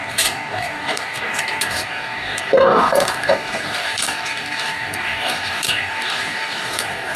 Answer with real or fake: fake